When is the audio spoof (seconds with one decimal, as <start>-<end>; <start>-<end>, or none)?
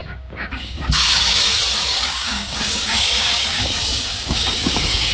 0.0-1.5; 1.9-5.1